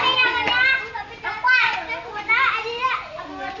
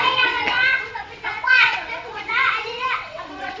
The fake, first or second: second